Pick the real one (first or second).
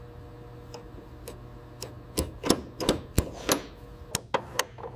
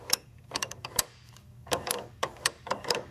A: first